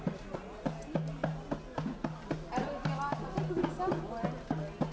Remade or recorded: recorded